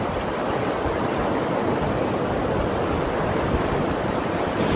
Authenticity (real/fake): real